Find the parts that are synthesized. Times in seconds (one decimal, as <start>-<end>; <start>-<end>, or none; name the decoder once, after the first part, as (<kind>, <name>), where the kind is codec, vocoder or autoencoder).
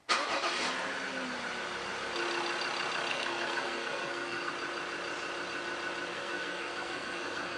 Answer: 3.1-4.5 (codec, SNAC); 6.1-7.6